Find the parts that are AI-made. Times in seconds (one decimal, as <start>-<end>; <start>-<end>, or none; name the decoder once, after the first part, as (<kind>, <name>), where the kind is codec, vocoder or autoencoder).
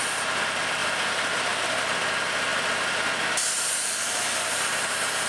0.8-1.8 (vocoder, BigVGAN v2)